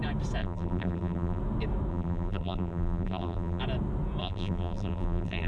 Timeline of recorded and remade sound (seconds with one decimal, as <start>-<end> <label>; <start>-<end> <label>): 0.0-0.4 recorded; 0.4-1.4 remade; 1.4-1.9 recorded; 1.9-3.6 remade; 3.6-4.2 recorded; 4.2-5.5 remade